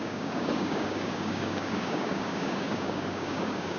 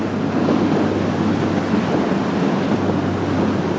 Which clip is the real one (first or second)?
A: second